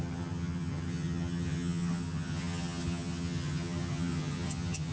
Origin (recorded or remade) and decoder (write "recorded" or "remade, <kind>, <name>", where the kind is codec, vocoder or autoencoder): remade, vocoder, HiFi-GAN